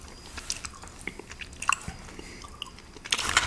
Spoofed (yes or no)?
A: no